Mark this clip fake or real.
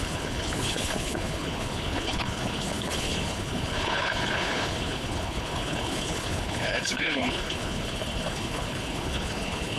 fake